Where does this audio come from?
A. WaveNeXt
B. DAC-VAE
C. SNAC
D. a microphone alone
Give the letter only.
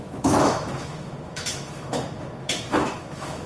B